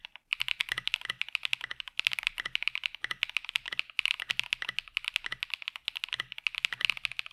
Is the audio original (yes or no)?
yes